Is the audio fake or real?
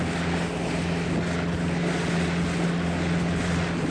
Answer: real